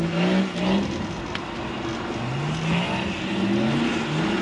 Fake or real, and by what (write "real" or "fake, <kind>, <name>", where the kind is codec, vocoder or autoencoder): real